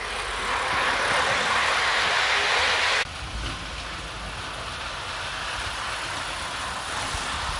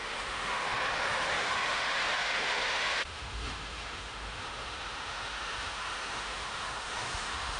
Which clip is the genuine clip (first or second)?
first